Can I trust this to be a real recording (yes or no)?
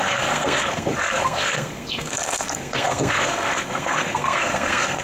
no